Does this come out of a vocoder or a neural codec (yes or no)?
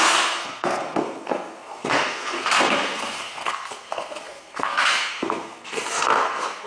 yes